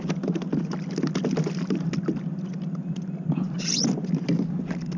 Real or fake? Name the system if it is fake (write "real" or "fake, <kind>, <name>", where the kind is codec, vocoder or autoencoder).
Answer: real